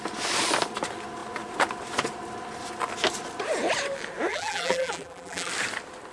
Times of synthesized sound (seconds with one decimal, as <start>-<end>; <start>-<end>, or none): 4.3-5.5